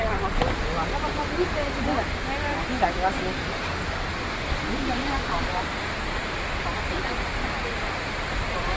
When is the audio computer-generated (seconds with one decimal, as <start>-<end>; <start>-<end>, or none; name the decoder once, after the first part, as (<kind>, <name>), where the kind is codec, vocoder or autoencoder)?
none